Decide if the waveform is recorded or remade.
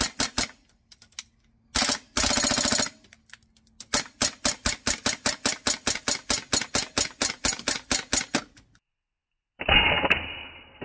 recorded